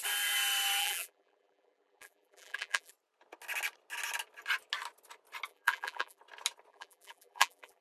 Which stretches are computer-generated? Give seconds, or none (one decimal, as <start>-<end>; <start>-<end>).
0.8-2.9; 5.5-6.2; 6.7-7.8